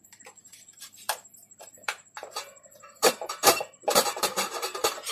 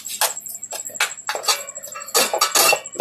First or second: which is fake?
first